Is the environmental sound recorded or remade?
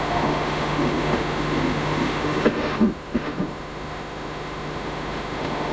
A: remade